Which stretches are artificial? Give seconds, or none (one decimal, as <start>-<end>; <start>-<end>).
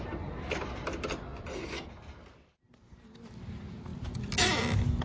none